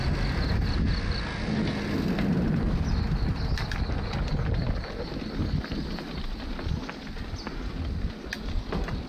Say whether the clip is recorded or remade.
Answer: recorded